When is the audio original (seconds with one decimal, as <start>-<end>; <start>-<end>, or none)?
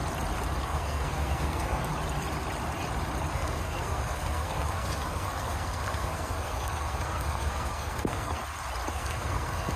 0.0-0.6; 1.9-3.3; 8.4-8.9